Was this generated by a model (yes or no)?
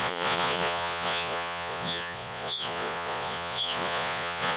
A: yes